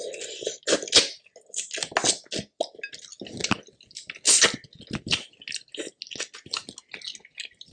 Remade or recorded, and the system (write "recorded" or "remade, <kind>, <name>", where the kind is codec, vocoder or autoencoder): recorded